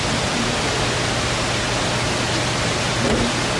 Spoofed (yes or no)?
no